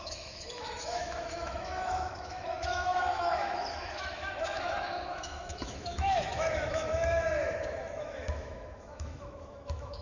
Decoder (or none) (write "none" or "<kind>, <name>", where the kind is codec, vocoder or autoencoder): autoencoder, DAC-VAE